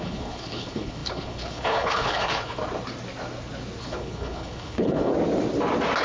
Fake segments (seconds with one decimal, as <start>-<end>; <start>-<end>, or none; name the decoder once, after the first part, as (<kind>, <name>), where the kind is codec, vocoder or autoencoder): 0.0-2.6 (codec, HILCodec); 3.8-5.1